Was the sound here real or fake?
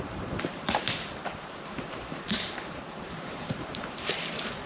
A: fake